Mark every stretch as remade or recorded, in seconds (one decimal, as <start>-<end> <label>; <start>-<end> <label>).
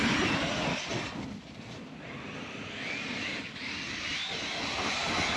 0.0-5.4 recorded